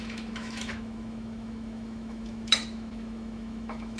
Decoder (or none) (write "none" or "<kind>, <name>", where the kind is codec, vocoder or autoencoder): autoencoder, DAC-VAE